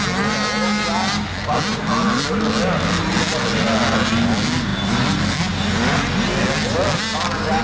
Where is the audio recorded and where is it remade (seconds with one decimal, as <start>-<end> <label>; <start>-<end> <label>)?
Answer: 0.0-7.6 recorded